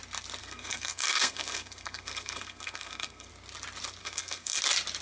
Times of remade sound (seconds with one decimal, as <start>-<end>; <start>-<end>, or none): 0.4-3.3; 4.0-4.6